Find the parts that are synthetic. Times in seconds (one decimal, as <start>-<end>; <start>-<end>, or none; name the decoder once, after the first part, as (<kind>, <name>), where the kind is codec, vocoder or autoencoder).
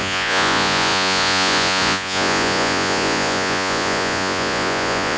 0.0-5.2 (vocoder, Vocos)